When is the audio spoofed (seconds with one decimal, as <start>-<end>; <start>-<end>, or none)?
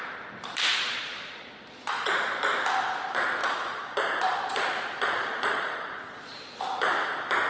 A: 0.7-2.4; 3.4-6.6